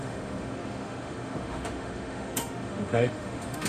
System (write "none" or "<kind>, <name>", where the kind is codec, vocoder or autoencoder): autoencoder, DAC-VAE